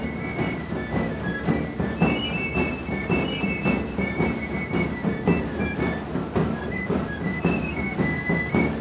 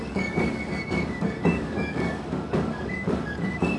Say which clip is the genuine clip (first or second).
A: first